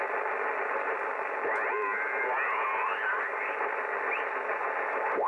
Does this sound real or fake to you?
real